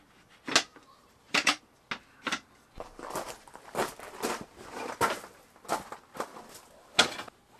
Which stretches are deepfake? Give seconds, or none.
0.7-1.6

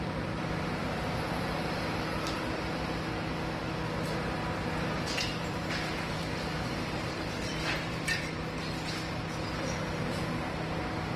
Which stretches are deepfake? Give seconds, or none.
0.8-1.9; 5.3-8.2

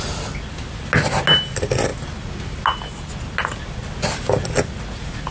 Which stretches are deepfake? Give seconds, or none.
none

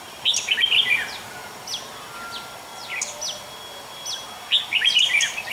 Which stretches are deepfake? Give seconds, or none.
0.0-1.4; 4.7-5.5